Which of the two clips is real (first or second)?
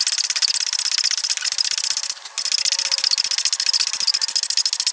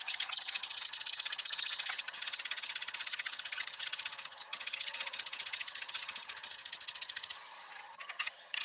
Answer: first